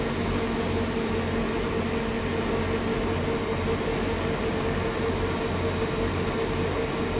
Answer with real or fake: real